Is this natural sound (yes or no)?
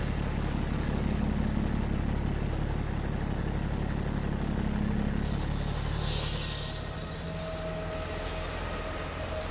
yes